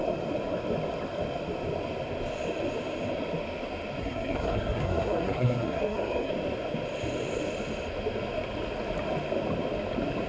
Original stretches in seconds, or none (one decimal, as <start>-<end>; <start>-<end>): 0.0-4.0; 6.3-10.3